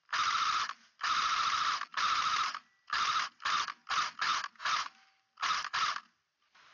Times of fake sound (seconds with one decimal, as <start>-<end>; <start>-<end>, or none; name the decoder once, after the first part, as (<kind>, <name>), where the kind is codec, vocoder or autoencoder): none